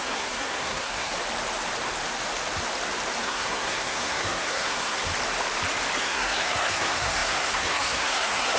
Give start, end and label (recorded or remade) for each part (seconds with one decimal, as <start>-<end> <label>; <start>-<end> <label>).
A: 0.0-1.1 remade; 1.1-3.2 recorded; 3.2-5.1 remade; 5.1-6.0 recorded; 6.0-8.6 remade